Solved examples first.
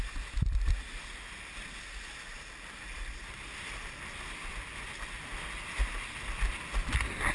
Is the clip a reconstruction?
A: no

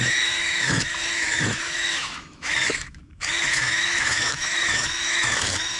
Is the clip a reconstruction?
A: yes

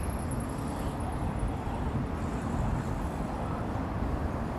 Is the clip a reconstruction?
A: no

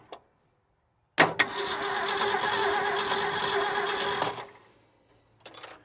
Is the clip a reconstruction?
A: no